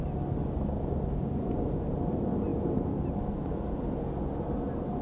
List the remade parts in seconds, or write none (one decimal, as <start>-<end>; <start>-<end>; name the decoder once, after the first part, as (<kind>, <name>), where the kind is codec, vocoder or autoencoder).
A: none